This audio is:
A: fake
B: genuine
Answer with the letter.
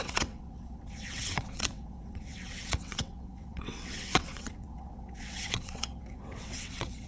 A